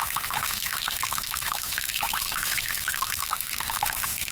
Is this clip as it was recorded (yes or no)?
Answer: no